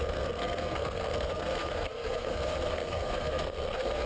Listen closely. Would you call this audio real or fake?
fake